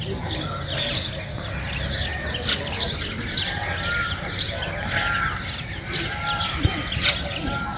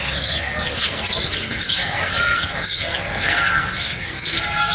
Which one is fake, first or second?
second